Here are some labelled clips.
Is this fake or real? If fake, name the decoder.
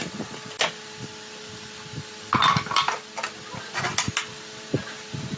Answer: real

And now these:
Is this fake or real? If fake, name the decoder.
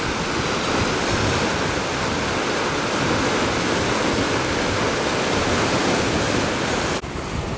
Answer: real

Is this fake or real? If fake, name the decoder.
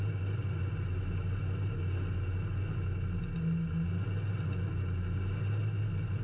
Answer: real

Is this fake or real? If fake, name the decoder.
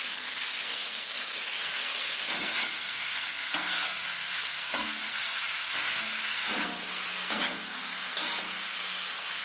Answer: fake, codec, SNAC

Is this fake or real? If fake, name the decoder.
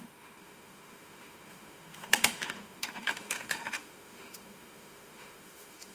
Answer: fake, autoencoder, DAC-VAE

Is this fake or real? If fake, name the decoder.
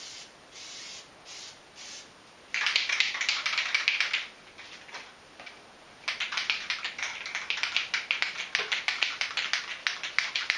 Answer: real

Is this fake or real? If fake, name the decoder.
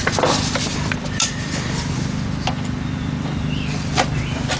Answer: real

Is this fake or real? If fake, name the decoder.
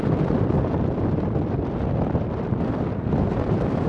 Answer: fake, vocoder, BigVGAN v2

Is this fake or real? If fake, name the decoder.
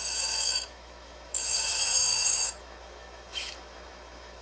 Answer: fake, autoencoder, DAC-VAE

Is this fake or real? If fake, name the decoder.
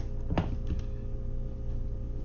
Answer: real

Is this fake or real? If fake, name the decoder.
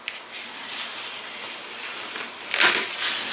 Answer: real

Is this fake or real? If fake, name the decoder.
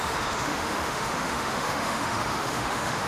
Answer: fake, autoencoder, DAC-VAE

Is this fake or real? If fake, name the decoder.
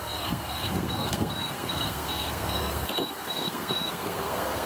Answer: fake, codec, SNAC